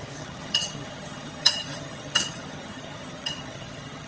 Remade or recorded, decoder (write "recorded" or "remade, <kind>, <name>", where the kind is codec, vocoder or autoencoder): remade, vocoder, HiFi-GAN